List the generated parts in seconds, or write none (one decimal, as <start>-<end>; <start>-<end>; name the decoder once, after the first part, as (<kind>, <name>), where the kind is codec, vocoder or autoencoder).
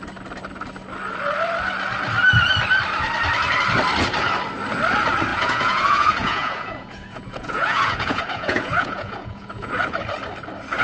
5.3-9.7 (vocoder, Vocos)